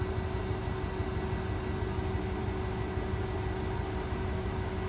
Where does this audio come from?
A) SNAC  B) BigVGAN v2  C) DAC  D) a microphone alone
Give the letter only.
D